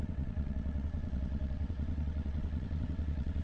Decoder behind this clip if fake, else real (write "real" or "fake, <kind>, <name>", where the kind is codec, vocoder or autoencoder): fake, vocoder, WaveNeXt